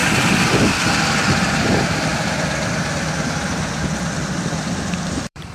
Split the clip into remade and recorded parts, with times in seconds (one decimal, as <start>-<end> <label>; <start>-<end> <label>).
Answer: 0.0-1.5 recorded; 1.5-2.1 remade; 2.1-4.6 recorded; 4.6-5.5 remade